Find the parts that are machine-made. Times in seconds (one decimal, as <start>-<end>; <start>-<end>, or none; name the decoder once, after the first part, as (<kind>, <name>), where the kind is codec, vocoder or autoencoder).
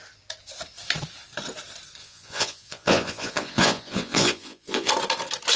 2.0-4.9 (vocoder, Vocos)